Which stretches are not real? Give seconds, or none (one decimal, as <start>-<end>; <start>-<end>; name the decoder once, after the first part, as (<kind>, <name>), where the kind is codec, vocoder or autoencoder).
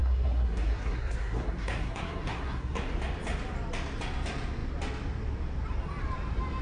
0.0-2.9 (codec, SNAC)